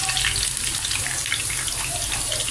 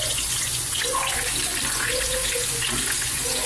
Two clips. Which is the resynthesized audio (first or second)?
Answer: second